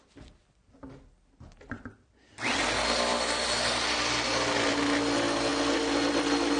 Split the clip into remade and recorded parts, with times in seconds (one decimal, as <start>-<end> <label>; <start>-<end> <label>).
0.0-6.6 recorded